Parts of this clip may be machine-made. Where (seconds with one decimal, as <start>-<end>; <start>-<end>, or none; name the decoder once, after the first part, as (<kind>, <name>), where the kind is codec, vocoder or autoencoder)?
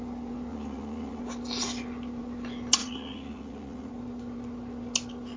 0.5-1.2 (vocoder, Vocos); 2.8-3.9